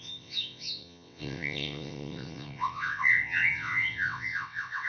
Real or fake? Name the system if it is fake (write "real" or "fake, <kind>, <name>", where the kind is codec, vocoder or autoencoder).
fake, vocoder, WaveNeXt